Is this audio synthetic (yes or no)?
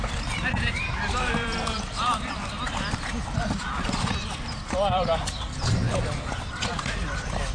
yes